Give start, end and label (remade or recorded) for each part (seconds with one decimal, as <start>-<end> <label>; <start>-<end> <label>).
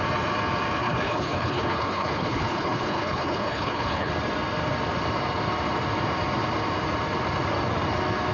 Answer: 0.0-0.8 recorded; 0.8-4.1 remade; 4.1-8.3 recorded